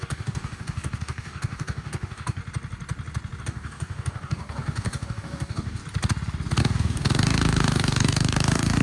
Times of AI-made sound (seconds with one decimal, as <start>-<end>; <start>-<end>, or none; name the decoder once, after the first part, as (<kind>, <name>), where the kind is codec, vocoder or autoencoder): 0.0-2.4 (codec, DAC); 3.4-5.8; 6.6-8.8